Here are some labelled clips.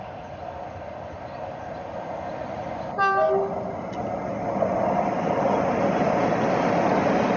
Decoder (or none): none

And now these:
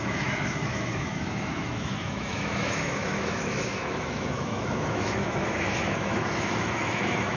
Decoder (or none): autoencoder, DAC-VAE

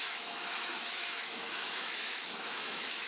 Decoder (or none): autoencoder, DAC-VAE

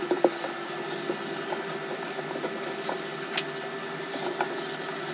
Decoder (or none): none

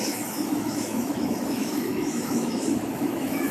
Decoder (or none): autoencoder, DAC-VAE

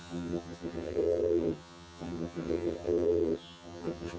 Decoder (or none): vocoder, HiFi-GAN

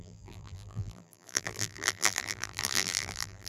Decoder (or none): vocoder, BigVGAN v2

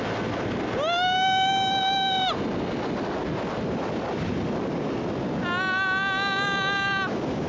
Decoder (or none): none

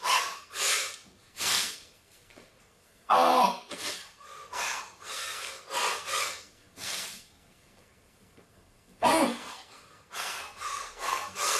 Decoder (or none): codec, SNAC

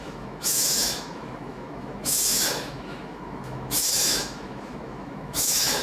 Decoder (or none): autoencoder, DAC-VAE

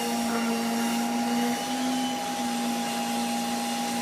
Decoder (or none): none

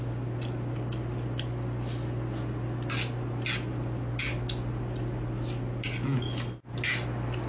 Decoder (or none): none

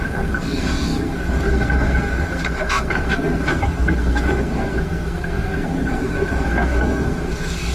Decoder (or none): codec, SNAC